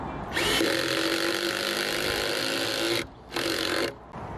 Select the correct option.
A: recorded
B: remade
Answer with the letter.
A